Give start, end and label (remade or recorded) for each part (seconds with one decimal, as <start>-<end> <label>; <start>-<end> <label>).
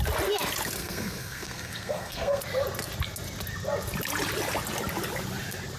0.0-0.8 recorded; 0.8-2.4 remade; 2.4-5.8 recorded